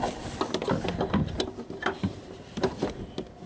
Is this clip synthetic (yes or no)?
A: yes